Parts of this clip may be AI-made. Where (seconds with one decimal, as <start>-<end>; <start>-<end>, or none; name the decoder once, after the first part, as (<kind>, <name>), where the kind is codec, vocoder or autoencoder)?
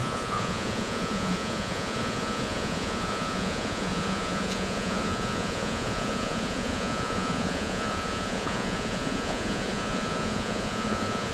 0.0-11.3 (vocoder, Vocos)